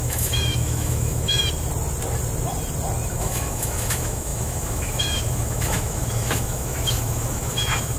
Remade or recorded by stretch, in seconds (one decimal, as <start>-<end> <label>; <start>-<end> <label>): 0.0-1.4 remade; 1.4-3.1 recorded; 3.1-8.0 remade